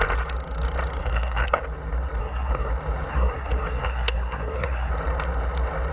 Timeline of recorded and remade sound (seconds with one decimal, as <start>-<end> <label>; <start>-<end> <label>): 0.0-1.0 recorded; 1.0-1.6 remade; 1.6-2.2 recorded; 2.2-2.7 remade; 2.7-3.1 recorded; 3.1-4.9 remade; 4.9-5.9 recorded